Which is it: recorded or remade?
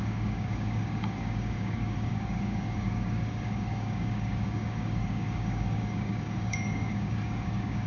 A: remade